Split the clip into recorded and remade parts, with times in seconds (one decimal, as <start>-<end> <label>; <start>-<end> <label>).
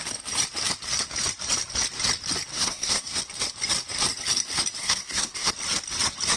0.0-2.5 recorded; 2.5-3.2 remade; 3.2-4.8 recorded; 4.8-5.5 remade; 5.5-6.4 recorded